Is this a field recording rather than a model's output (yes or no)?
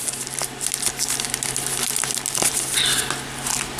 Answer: yes